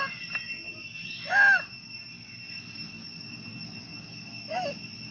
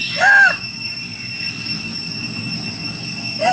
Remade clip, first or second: second